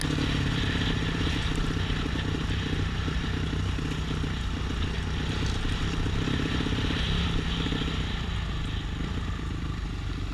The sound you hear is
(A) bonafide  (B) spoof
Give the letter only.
A